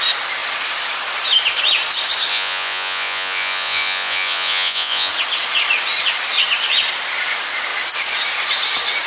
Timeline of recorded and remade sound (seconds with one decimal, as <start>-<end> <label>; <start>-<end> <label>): 0.0-2.3 recorded; 2.3-5.1 remade; 5.1-9.1 recorded